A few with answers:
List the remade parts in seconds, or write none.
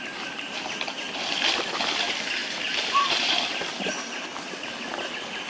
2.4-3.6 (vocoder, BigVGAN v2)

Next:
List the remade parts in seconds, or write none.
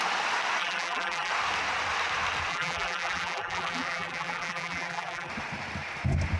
0.6-1.3 (vocoder, BigVGAN v2); 2.5-5.3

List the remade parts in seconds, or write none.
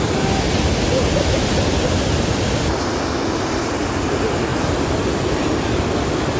4.5-5.7 (vocoder, BigVGAN v2)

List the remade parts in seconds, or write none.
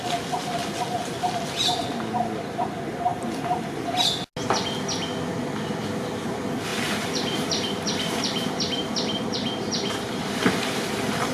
6.7-10.9 (vocoder, BigVGAN v2)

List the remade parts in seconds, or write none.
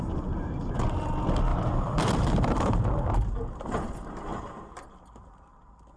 1.5-2.8 (vocoder, BigVGAN v2)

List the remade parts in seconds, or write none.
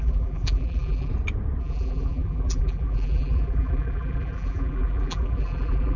0.0-1.1 (vocoder, BigVGAN v2); 1.6-6.0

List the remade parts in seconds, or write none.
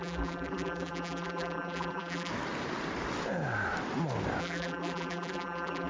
0.0-2.3 (vocoder, BigVGAN v2); 4.4-5.9